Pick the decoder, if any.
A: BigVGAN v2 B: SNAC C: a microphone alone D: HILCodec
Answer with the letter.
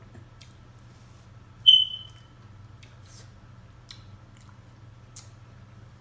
C